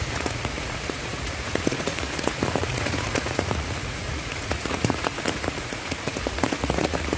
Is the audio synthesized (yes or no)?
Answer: yes